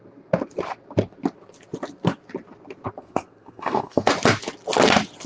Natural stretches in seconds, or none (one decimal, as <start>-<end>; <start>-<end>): 0.0-3.0; 4.1-5.3